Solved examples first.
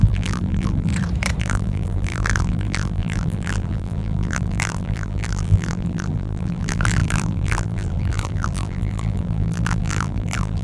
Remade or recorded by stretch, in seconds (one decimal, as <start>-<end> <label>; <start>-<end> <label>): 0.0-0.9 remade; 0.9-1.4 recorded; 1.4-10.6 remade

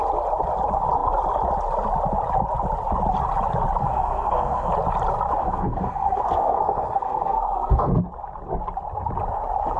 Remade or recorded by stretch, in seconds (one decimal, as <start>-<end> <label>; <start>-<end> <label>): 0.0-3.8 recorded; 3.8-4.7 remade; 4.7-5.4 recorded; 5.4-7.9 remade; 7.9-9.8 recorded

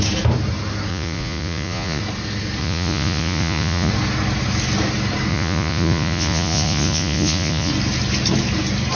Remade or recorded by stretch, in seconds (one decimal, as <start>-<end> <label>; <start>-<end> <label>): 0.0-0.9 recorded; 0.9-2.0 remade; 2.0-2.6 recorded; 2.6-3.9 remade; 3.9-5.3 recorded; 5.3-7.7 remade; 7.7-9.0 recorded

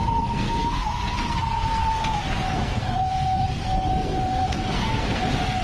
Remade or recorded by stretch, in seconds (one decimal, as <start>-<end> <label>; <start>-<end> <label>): 0.0-5.6 remade